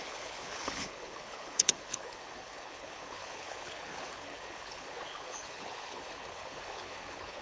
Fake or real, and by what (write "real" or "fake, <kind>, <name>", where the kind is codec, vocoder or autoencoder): fake, codec, HILCodec